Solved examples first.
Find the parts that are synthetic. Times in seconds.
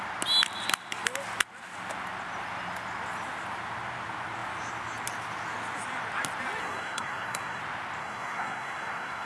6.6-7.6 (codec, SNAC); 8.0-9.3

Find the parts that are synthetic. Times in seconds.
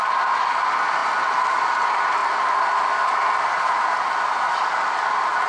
none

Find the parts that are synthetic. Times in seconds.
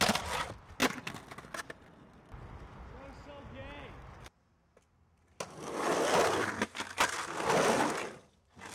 none